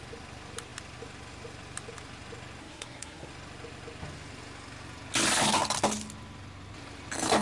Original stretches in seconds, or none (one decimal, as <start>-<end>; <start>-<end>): 0.0-2.6; 3.3-7.4